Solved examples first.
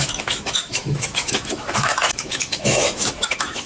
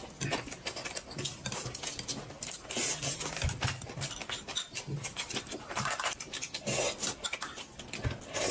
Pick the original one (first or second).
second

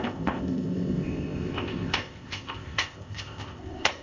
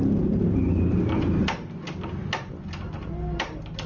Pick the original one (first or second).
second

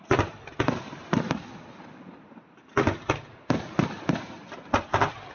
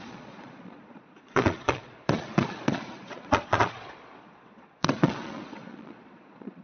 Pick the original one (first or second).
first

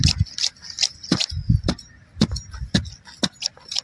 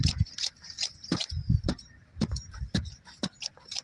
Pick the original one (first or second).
first